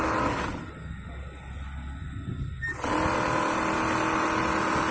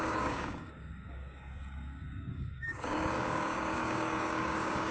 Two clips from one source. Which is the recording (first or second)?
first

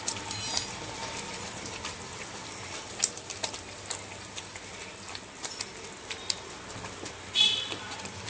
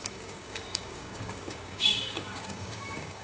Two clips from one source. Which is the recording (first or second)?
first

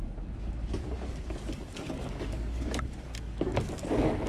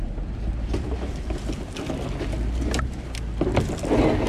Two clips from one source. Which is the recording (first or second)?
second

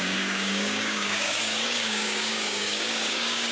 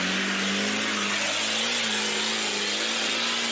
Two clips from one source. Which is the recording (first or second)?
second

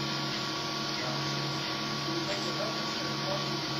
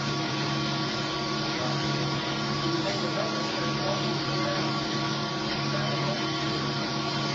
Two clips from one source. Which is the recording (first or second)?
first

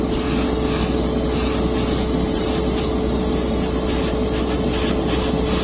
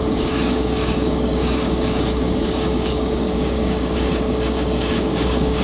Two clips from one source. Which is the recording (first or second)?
first